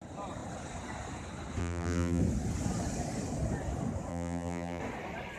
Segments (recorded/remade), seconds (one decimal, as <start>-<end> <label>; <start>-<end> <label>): 0.0-1.6 recorded; 1.6-2.2 remade; 2.2-4.1 recorded; 4.1-4.8 remade; 4.8-5.4 recorded